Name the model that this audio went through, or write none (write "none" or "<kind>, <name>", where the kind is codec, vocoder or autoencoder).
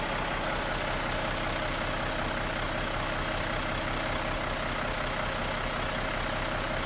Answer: none